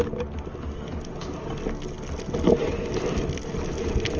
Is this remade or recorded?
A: recorded